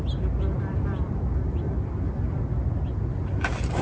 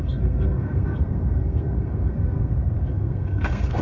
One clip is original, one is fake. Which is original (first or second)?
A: first